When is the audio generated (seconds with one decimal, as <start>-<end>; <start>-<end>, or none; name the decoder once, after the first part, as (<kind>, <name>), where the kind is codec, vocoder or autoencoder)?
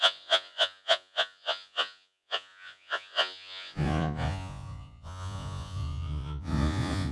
0.0-7.1 (vocoder, Vocos)